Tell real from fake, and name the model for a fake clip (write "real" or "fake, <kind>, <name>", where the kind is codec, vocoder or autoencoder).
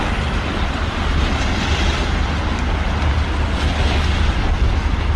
real